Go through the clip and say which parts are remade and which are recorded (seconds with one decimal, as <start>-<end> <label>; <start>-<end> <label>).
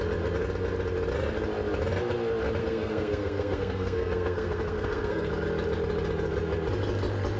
0.0-2.6 recorded; 2.6-5.3 remade; 5.3-7.4 recorded